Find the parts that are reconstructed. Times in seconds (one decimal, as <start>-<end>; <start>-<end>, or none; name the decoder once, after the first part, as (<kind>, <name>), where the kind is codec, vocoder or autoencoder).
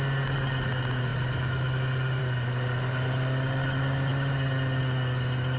none